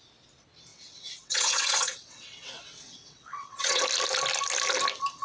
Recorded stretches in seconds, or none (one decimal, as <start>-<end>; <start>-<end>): 0.0-0.7; 3.8-5.2